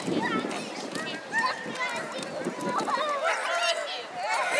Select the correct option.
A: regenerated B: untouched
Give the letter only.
B